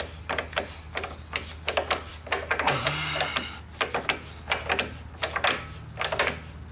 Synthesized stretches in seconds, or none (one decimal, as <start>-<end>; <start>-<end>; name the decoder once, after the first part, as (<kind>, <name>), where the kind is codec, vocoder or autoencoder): none